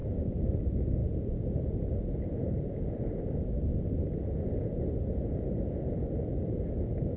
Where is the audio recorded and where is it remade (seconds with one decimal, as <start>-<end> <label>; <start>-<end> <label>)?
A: 0.0-1.0 recorded; 1.0-2.6 remade; 2.6-3.7 recorded; 3.7-4.8 remade; 4.8-7.2 recorded